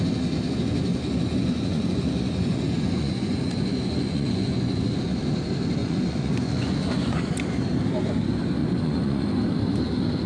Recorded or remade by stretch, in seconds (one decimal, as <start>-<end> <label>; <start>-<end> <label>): 0.0-0.9 recorded; 0.9-4.9 remade; 4.9-5.8 recorded; 5.8-7.2 remade; 7.2-8.6 recorded; 8.6-9.4 remade; 9.4-10.3 recorded